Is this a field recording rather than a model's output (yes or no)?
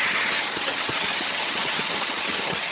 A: no